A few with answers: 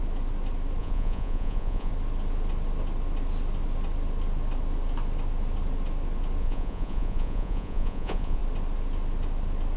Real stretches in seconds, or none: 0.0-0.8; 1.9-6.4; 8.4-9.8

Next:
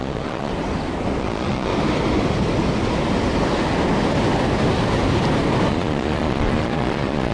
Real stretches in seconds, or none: 0.5-1.2; 1.7-5.7

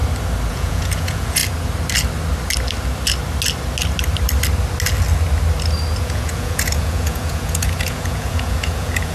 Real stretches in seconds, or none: 0.0-0.5; 1.4-6.0

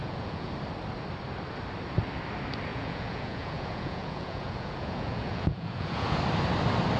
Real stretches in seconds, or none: 0.5-2.7; 6.2-7.0

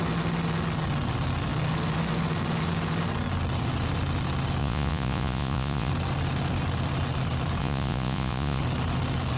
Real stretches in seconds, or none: 0.0-4.6; 5.9-7.6; 8.6-9.4

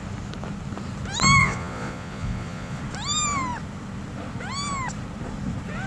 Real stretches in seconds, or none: 0.0-1.4; 2.8-5.9

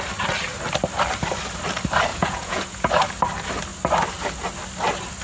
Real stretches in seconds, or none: 0.0-2.1; 2.9-5.2